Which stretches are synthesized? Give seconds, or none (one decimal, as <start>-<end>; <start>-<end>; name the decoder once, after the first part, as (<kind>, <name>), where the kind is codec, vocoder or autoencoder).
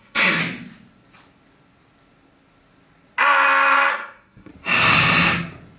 0.0-0.4 (codec, SNAC); 3.9-4.5